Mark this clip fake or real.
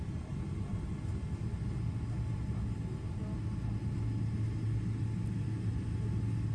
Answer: real